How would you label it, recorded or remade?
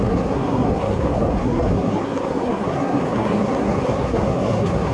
remade